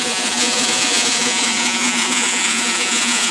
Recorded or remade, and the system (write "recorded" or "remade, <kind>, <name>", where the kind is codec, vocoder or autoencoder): remade, vocoder, Vocos